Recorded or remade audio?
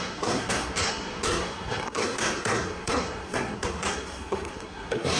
remade